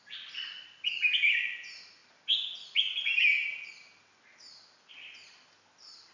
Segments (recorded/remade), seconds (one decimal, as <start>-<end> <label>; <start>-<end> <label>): 0.0-6.1 recorded